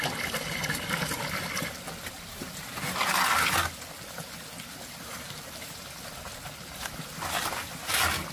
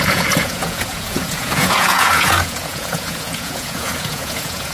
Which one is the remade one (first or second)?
second